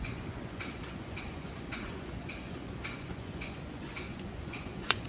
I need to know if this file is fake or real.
fake